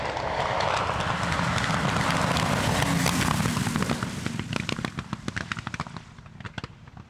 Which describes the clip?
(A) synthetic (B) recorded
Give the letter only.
B